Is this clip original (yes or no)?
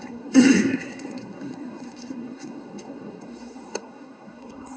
no